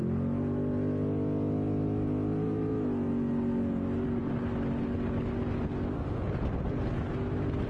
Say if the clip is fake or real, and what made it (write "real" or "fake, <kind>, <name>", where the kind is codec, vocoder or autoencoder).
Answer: real